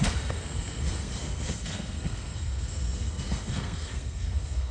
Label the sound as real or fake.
fake